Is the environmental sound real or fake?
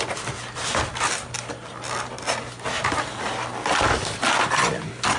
real